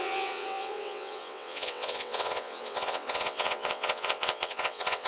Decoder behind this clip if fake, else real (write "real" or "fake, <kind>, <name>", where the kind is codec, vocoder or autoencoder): fake, vocoder, WaveNeXt